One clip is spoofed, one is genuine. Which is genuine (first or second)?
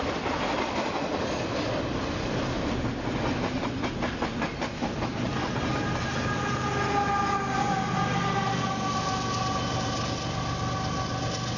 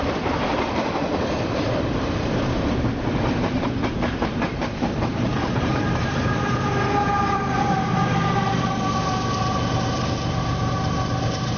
first